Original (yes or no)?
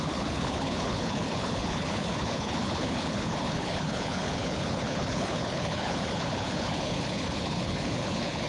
no